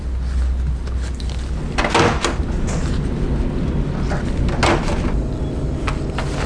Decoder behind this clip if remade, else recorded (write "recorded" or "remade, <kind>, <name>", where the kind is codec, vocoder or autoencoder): recorded